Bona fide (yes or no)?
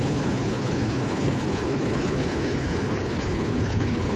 no